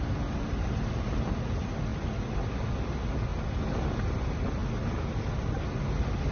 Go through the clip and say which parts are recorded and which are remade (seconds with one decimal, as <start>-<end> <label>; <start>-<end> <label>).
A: 0.0-1.9 remade; 1.9-2.7 recorded; 2.7-3.3 remade; 3.3-4.1 recorded; 4.1-4.6 remade; 4.6-5.4 recorded; 5.4-6.3 remade